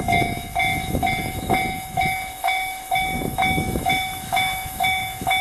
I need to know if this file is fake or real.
fake